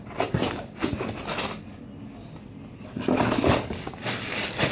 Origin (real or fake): real